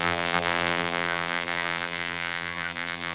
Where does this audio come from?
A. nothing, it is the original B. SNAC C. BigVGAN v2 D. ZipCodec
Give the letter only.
C